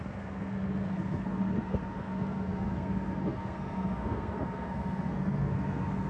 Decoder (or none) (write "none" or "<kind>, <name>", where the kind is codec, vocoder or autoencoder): codec, SNAC